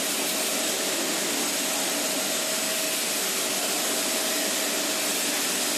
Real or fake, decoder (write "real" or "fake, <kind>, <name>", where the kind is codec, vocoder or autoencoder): real